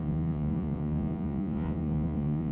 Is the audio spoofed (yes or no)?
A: yes